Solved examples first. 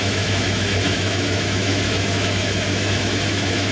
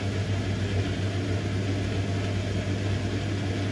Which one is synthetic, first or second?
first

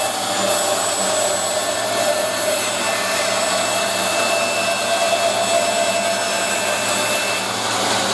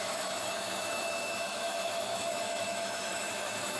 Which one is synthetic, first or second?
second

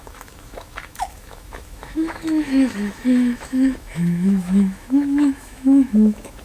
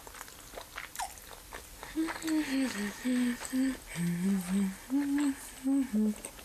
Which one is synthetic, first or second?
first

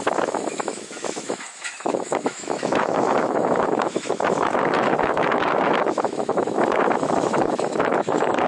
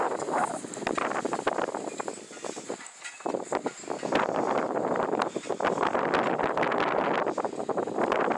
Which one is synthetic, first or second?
first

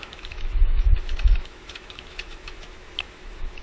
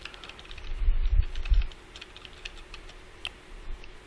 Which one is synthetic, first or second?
first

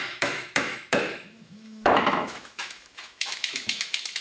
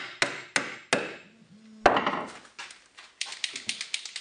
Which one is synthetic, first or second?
first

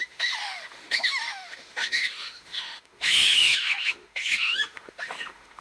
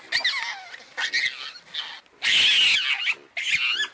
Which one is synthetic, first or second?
first